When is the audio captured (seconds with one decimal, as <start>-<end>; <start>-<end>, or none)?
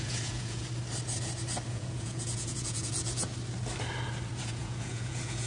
0.6-1.7; 3.3-4.4